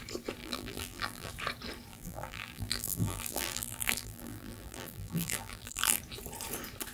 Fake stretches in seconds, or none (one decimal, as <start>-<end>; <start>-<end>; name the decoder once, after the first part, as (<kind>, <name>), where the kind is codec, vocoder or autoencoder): 0.4-1.3 (vocoder, BigVGAN v2); 1.9-6.0